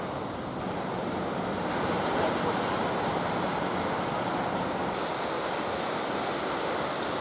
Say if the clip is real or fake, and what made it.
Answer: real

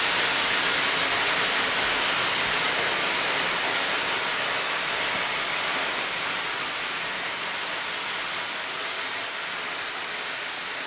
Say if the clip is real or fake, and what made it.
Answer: real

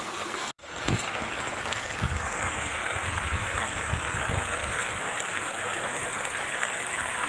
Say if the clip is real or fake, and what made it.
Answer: fake, codec, SNAC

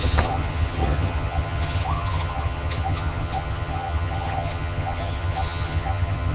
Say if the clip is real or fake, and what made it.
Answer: fake, vocoder, HiFi-GAN